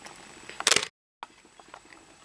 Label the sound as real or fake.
real